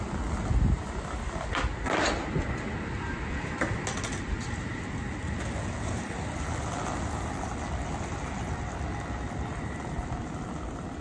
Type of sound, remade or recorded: recorded